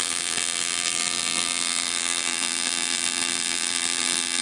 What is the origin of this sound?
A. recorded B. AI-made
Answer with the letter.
B